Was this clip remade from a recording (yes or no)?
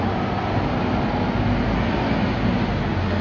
no